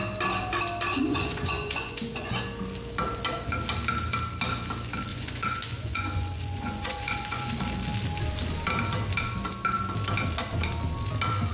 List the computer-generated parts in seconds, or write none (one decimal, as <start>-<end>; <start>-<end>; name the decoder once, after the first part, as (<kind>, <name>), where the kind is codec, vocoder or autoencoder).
0.9-2.4 (vocoder, Vocos); 5.1-7.5